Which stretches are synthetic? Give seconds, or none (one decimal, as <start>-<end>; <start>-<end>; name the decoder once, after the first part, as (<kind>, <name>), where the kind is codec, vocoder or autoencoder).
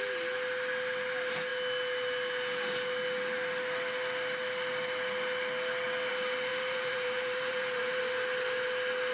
6.5-8.0 (vocoder, BigVGAN v2)